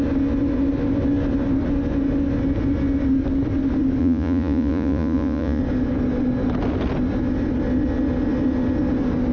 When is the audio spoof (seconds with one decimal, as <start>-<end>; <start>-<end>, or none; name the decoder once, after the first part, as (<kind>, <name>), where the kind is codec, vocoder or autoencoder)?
4.0-5.6 (vocoder, Vocos)